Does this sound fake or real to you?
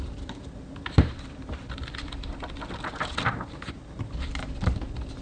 real